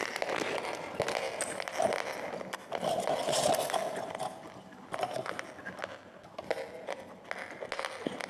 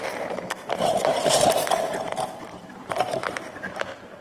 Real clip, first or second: first